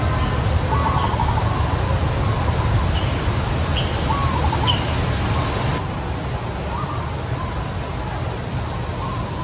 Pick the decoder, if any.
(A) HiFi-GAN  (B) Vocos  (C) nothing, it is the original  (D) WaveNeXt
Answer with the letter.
C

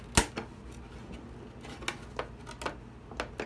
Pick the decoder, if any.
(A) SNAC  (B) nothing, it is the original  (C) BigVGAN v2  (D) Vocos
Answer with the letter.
B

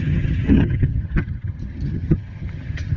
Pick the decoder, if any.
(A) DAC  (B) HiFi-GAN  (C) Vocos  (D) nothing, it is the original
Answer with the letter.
B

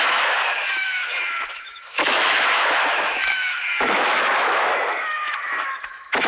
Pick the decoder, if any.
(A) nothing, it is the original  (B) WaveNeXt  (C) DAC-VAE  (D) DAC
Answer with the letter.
C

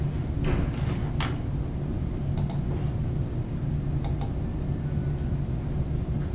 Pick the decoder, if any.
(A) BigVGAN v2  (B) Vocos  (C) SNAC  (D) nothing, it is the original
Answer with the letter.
D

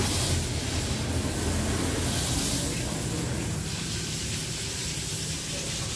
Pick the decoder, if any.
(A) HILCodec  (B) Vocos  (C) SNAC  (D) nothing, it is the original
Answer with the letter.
D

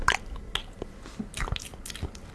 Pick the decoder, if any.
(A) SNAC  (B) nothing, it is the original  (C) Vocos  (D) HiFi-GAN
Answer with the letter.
B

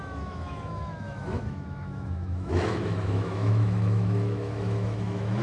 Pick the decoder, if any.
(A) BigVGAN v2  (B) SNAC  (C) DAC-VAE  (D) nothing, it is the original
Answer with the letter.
C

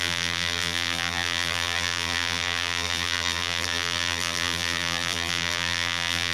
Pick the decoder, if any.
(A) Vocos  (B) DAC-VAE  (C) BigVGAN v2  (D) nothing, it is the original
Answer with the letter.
C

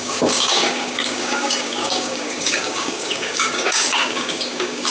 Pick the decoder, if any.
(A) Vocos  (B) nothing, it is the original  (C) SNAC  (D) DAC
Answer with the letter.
D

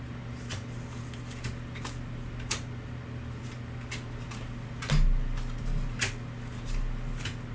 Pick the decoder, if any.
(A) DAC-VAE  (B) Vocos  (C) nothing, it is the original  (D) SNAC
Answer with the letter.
C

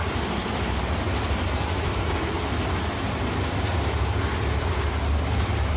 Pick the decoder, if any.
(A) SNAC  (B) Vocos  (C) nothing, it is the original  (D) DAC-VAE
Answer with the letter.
C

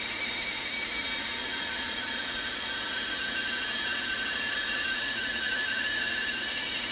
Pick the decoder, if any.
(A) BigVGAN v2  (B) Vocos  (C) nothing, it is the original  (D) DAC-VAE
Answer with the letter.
B